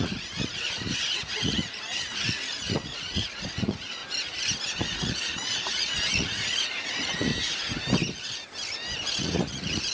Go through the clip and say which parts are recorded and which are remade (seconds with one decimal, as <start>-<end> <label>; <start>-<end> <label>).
0.0-4.0 remade; 4.0-4.8 recorded; 4.8-7.3 remade; 7.3-9.2 recorded; 9.2-9.9 remade